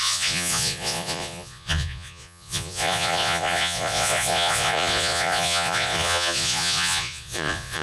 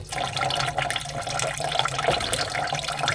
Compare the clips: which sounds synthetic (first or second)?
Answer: first